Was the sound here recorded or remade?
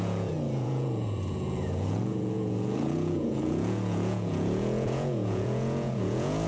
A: remade